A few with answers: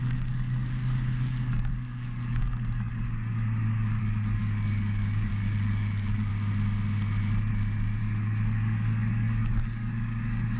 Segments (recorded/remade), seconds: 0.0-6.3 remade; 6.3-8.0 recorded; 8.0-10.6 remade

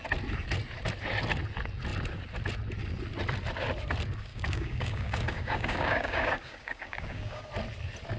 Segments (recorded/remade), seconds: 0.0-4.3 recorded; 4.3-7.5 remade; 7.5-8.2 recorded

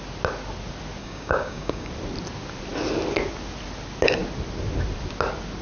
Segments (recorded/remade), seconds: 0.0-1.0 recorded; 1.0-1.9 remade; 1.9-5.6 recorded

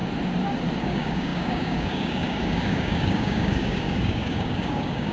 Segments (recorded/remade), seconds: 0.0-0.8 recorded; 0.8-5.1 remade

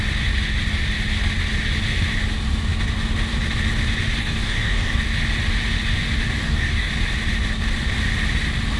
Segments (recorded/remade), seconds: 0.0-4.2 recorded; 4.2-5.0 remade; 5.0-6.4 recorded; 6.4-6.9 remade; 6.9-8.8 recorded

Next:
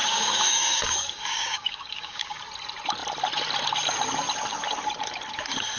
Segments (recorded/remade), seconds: 0.0-2.4 remade; 2.4-5.8 recorded

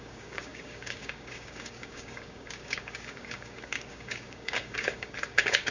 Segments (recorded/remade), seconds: 0.0-5.7 remade